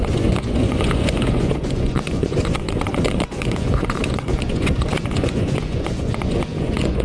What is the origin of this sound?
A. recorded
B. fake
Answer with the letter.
B